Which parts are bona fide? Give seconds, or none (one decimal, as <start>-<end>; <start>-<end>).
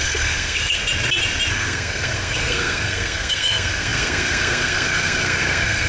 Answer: 0.8-1.5